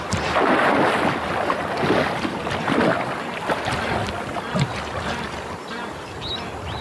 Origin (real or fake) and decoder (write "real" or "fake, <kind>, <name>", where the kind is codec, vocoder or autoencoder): real